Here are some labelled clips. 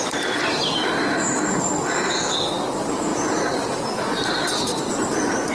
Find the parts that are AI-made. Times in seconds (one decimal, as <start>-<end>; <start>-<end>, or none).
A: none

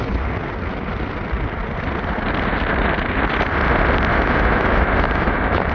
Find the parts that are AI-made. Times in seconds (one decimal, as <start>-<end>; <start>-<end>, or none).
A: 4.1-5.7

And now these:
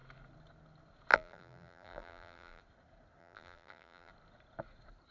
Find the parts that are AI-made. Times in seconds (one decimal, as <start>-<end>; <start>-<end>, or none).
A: 1.1-2.6; 3.2-4.1

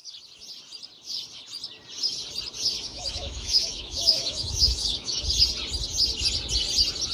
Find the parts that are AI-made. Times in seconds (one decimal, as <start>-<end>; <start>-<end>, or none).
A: 2.9-5.2